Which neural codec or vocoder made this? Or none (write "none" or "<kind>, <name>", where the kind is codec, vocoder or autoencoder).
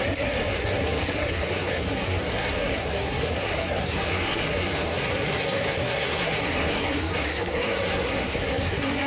codec, SNAC